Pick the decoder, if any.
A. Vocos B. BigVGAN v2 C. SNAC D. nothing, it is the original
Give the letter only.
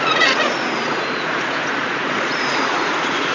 A